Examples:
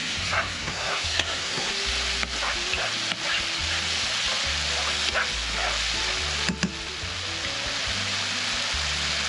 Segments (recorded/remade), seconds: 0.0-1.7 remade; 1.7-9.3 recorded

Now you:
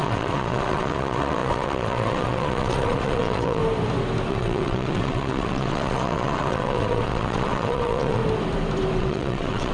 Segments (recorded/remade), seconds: 0.0-3.6 remade; 3.6-4.3 recorded; 4.3-8.2 remade; 8.2-9.0 recorded; 9.0-9.7 remade